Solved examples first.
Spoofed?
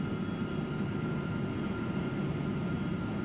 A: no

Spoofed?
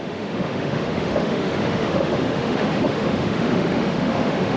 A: yes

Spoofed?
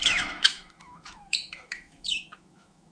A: yes